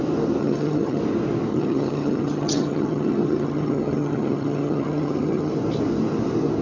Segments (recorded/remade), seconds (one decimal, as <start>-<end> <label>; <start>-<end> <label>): 0.0-0.4 recorded; 0.4-1.0 remade; 1.0-1.5 recorded; 1.5-5.5 remade; 5.5-6.6 recorded